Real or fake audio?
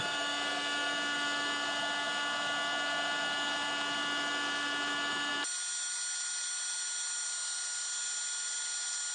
real